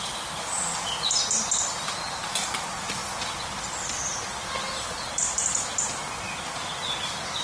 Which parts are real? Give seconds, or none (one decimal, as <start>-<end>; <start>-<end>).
0.0-7.4